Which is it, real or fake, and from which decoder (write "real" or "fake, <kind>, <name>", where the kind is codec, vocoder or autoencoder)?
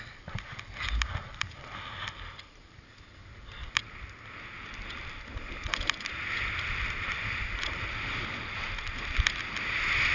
real